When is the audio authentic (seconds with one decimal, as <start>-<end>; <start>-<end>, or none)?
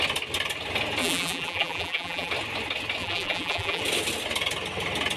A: 0.0-1.0; 2.3-3.0; 3.8-5.2